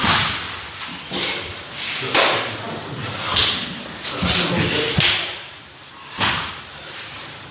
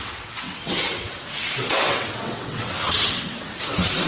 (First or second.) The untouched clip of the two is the first